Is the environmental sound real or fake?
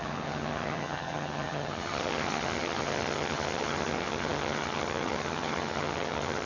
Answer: fake